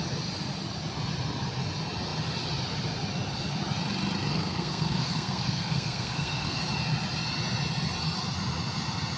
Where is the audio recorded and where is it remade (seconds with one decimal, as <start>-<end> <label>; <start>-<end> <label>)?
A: 0.0-4.3 recorded; 4.3-6.6 remade; 6.6-9.2 recorded